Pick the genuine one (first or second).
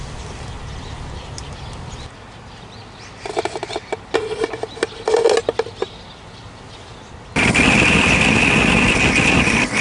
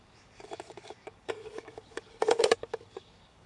first